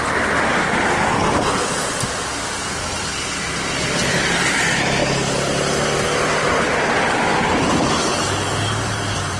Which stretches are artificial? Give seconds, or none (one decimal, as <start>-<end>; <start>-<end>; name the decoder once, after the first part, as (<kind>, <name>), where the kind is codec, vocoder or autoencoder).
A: none